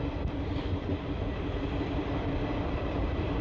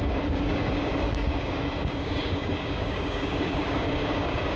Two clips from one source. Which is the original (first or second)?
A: first